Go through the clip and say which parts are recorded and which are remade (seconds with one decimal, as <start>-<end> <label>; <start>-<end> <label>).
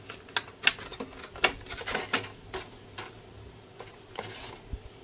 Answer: 0.0-5.0 recorded